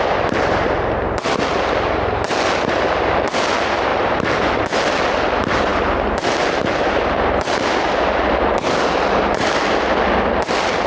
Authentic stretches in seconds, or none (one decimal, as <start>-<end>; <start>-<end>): 0.0-10.9

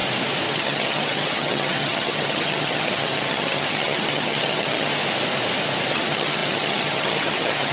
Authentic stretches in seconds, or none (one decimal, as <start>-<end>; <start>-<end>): 0.0-0.5; 4.9-5.9

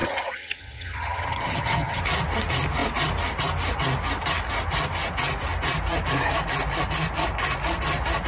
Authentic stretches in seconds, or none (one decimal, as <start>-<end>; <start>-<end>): 2.0-8.3

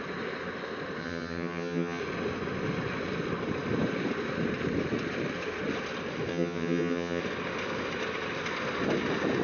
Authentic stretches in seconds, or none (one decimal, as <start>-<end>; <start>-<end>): 0.0-1.0; 2.0-6.3; 7.2-9.4

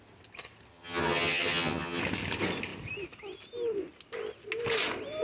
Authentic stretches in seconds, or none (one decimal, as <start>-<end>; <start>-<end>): 0.0-0.7; 2.0-5.2